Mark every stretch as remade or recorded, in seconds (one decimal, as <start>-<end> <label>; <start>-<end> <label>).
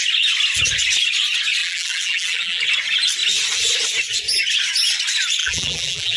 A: 0.0-1.6 recorded; 1.6-2.6 remade; 2.6-5.4 recorded; 5.4-6.2 remade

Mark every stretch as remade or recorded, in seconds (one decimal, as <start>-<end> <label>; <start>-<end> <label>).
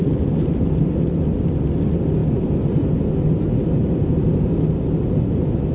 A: 0.0-0.8 remade; 0.8-5.7 recorded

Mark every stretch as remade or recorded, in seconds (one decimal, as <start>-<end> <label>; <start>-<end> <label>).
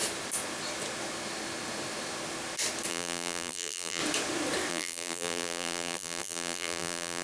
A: 0.0-2.9 recorded; 2.9-4.0 remade; 4.0-4.7 recorded; 4.7-7.2 remade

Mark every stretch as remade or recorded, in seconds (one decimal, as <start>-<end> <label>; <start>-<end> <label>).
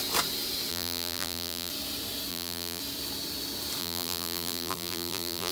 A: 0.0-0.7 recorded; 0.7-1.7 remade; 1.7-2.3 recorded; 2.3-2.8 remade; 2.8-3.8 recorded; 3.8-5.5 remade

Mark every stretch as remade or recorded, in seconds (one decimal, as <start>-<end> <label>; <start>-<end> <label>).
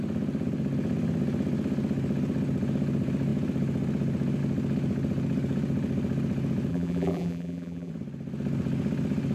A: 0.0-6.7 recorded; 6.7-7.9 remade; 7.9-9.3 recorded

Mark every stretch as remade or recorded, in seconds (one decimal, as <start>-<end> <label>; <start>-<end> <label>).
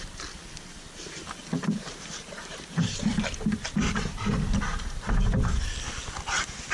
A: 0.0-1.5 recorded; 1.5-5.5 remade; 5.5-6.7 recorded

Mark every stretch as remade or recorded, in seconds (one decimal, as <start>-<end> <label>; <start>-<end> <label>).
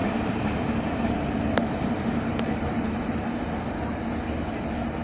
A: 0.0-3.0 remade; 3.0-5.0 recorded